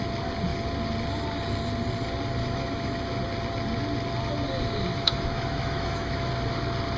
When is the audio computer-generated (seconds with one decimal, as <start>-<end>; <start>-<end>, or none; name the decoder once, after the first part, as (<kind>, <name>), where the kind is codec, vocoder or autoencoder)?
2.4-3.2 (autoencoder, DAC-VAE); 4.9-6.3

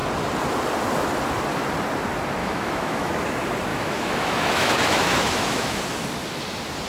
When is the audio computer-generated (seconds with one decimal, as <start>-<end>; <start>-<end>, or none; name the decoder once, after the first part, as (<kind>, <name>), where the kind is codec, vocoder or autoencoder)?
2.4-3.1 (autoencoder, DAC-VAE); 3.7-5.8

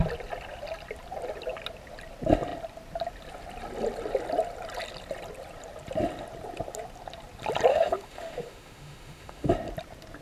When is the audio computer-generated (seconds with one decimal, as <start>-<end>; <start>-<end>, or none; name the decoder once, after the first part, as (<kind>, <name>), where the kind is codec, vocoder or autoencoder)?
7.7-9.5 (autoencoder, DAC-VAE)

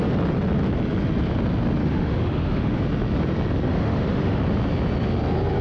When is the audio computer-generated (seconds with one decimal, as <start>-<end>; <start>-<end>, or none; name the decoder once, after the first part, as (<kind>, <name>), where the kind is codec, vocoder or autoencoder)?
1.8-2.8 (autoencoder, DAC-VAE); 3.7-4.4

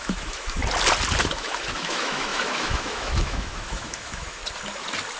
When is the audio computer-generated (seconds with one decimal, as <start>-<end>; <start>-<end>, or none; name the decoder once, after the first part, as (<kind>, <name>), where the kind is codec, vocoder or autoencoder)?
0.0-0.6 (autoencoder, DAC-VAE); 1.2-4.4

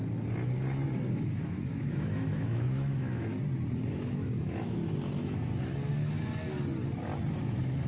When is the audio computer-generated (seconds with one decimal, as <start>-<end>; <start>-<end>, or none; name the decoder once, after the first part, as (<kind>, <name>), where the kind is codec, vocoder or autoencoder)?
1.1-3.3 (autoencoder, DAC-VAE); 3.9-4.8; 7.4-7.9

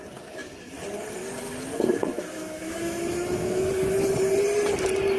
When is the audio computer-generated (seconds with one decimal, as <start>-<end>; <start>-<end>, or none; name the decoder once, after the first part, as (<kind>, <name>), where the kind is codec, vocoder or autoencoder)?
2.1-3.7 (autoencoder, DAC-VAE)